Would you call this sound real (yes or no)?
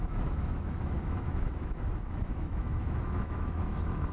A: no